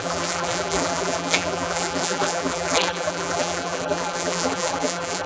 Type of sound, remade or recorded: remade